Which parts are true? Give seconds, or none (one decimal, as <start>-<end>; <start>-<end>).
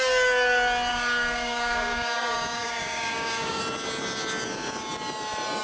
0.0-0.9; 3.6-5.6